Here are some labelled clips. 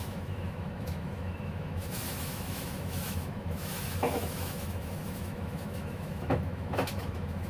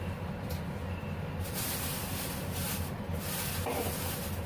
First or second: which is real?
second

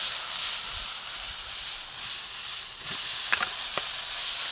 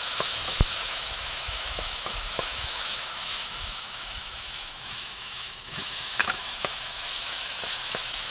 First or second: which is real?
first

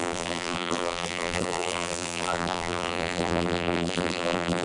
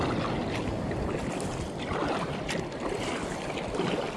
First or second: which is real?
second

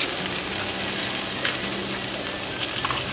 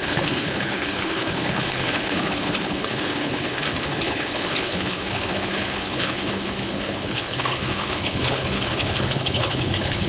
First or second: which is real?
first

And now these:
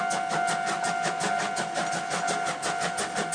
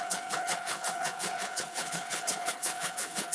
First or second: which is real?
first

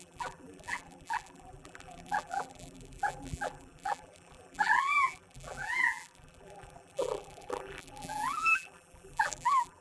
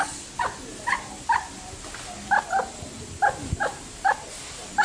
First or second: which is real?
second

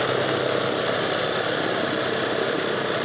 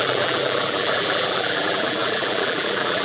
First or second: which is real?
first